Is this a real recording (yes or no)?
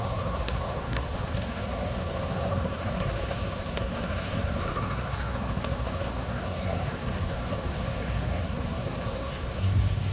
no